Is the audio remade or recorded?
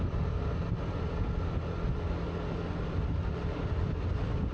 recorded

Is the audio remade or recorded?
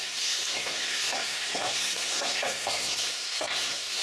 remade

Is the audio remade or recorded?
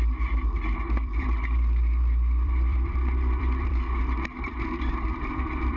remade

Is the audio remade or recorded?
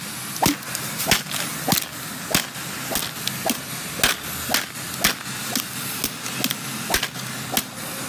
recorded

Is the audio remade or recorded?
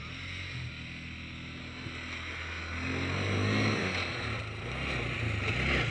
recorded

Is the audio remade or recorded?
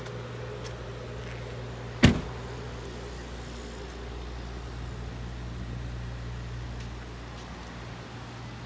recorded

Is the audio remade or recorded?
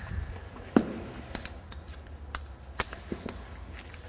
recorded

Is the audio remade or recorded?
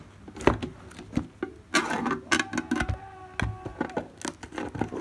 recorded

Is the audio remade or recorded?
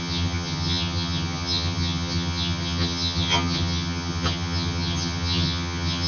remade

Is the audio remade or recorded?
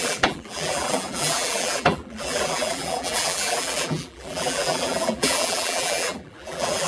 remade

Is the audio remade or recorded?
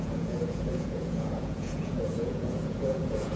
remade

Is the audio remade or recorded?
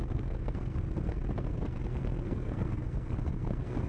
remade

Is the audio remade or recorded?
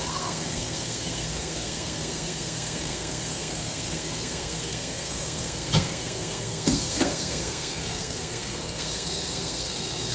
remade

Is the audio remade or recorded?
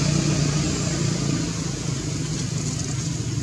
recorded